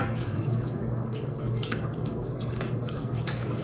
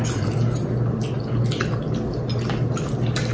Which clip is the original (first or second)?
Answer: second